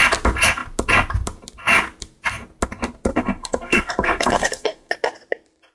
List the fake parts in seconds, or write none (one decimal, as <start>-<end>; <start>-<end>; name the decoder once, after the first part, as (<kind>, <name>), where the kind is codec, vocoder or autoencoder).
3.1-4.9 (codec, SNAC)